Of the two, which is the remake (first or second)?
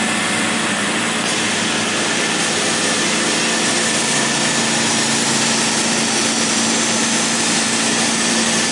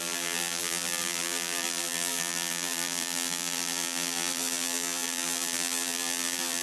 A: second